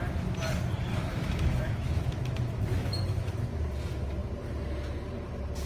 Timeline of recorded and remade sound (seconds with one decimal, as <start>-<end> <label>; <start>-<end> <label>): 0.0-0.9 recorded; 0.9-3.6 remade; 3.6-5.7 recorded